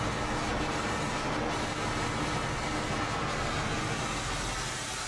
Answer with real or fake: real